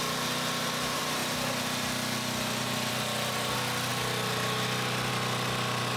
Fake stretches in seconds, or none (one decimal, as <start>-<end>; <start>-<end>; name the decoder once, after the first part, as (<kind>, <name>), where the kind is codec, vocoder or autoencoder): none